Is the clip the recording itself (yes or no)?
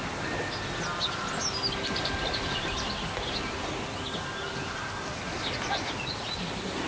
yes